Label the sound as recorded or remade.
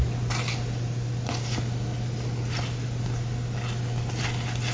recorded